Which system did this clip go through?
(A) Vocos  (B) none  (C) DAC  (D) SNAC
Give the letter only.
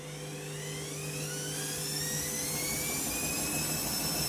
B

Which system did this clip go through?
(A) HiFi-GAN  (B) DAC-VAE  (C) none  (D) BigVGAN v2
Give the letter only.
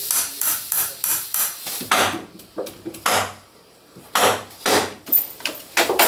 D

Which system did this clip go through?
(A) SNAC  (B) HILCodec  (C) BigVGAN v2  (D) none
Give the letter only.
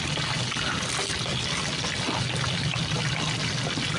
D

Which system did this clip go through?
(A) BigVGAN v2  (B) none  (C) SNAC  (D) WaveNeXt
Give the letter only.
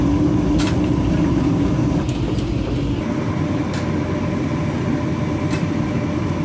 B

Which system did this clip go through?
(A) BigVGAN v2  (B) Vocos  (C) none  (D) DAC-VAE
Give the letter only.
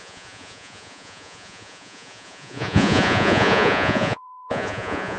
B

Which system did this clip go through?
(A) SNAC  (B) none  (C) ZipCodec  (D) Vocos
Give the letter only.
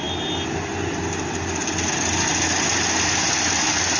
B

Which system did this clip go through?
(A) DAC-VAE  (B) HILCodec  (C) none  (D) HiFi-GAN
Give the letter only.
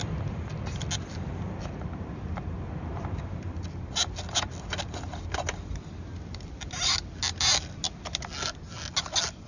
C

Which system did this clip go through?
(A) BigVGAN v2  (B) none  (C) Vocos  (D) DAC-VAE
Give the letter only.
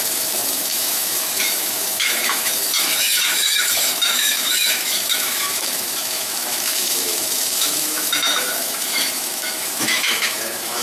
D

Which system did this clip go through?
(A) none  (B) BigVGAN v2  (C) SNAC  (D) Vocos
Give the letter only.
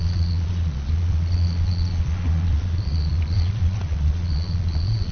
D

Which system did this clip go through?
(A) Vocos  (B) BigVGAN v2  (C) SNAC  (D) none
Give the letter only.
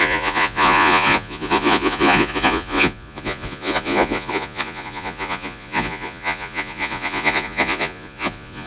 A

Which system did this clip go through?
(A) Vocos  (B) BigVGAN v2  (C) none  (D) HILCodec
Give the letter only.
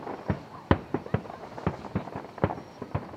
B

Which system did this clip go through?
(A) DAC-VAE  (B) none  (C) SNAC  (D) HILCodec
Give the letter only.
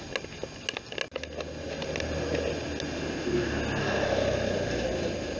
B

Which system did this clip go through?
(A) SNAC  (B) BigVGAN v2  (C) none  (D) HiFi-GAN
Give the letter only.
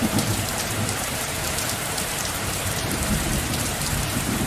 B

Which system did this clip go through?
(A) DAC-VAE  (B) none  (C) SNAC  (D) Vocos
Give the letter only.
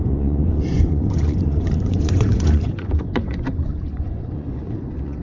D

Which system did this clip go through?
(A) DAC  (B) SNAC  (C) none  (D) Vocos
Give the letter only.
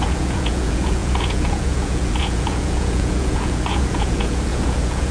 D